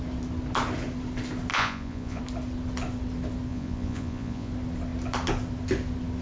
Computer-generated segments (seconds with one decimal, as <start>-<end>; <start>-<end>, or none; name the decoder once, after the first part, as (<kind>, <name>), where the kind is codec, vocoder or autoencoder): 1.5-2.2 (vocoder, Vocos); 3.5-4.5